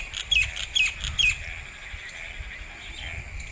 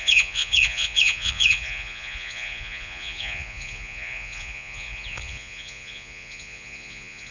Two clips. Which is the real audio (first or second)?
first